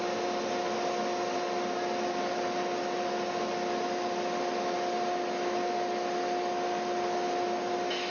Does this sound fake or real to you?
real